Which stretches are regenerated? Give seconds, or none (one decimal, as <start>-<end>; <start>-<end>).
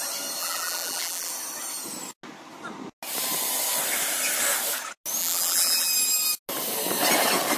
0.4-1.3; 5.2-5.9